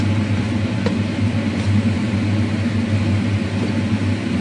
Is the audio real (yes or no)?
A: yes